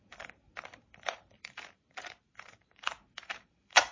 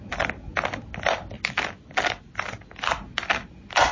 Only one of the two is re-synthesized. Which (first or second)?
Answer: first